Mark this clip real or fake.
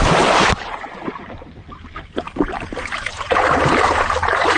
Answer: fake